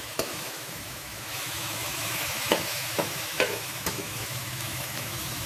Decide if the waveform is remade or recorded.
remade